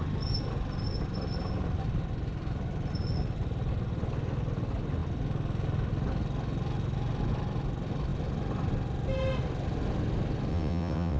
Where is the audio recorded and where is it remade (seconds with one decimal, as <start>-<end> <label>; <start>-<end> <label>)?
0.0-10.5 recorded; 10.5-11.2 remade